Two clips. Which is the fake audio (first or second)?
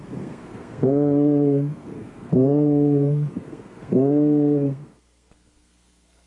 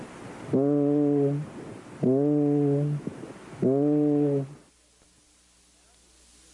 first